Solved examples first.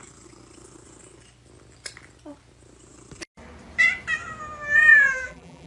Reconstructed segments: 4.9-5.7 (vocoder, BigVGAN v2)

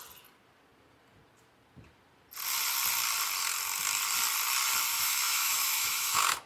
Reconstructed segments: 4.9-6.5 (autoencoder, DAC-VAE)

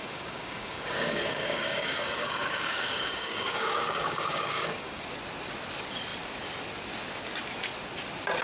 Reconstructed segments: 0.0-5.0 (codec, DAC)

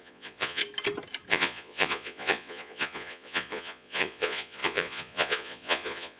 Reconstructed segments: 0.0-0.6 (vocoder, Vocos); 1.3-6.2

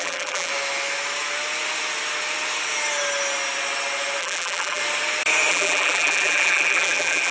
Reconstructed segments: 0.0-0.5 (vocoder, BigVGAN v2); 4.2-4.8; 5.5-7.3

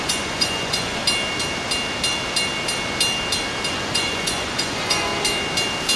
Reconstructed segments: 0.0-1.0 (vocoder, Vocos); 3.7-5.1

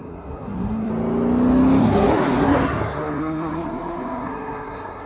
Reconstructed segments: 0.0-0.9 (codec, SNAC); 1.8-5.1

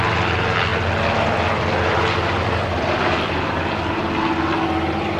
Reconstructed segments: 0.7-3.8 (vocoder, BigVGAN v2)